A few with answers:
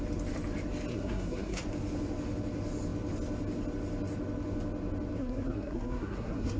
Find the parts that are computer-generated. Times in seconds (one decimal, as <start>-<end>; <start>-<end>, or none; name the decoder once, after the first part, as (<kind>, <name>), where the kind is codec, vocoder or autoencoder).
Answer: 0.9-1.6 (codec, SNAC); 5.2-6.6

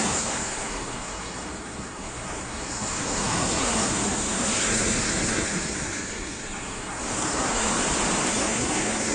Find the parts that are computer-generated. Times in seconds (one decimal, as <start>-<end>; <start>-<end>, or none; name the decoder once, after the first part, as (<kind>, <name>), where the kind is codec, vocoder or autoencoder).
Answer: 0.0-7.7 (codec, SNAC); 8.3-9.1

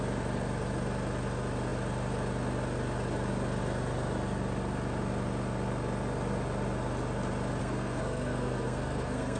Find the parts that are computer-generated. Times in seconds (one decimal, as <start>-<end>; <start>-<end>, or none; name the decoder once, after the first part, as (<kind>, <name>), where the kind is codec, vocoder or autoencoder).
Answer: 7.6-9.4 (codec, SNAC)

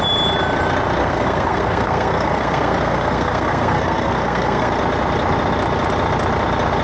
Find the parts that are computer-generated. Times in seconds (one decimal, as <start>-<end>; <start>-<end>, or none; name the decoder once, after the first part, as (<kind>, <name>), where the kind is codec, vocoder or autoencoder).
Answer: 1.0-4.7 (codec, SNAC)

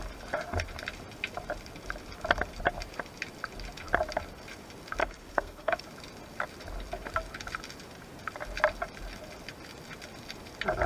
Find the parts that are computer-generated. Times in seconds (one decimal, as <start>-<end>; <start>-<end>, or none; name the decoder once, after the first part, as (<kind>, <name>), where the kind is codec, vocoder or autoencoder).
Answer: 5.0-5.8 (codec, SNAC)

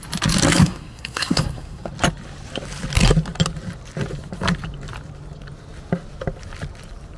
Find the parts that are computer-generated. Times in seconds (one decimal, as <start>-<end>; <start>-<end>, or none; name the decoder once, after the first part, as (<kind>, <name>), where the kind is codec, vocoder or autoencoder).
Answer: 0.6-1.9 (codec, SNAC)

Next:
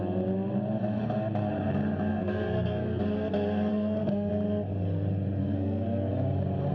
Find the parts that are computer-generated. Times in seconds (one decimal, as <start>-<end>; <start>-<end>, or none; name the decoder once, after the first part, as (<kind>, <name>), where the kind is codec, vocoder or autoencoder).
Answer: 2.1-3.0 (codec, SNAC); 3.7-4.3; 5.4-6.1